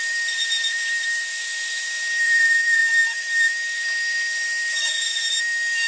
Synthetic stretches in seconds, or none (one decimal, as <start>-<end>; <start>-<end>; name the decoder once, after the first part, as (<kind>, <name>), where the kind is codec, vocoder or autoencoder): 0.0-5.9 (vocoder, BigVGAN v2)